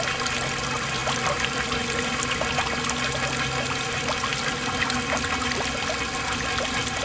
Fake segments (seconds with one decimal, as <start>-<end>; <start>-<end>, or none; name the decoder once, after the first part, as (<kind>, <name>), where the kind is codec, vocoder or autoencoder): 1.0-2.0 (vocoder, BigVGAN v2)